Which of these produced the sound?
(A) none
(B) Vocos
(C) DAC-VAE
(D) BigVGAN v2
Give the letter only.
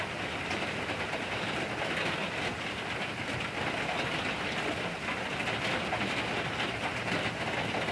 A